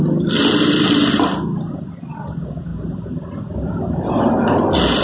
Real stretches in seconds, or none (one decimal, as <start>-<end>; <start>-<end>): 0.0-2.7; 3.3-5.0